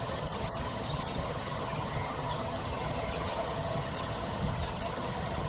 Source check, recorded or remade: remade